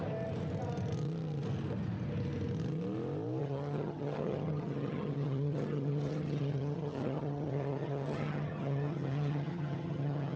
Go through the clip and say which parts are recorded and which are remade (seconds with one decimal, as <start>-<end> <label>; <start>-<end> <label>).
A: 0.0-3.4 recorded; 3.4-10.4 remade